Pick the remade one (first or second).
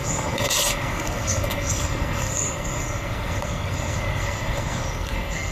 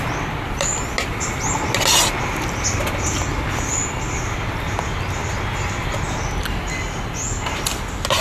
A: first